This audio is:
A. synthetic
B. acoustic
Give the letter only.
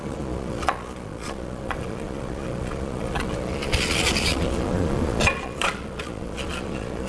A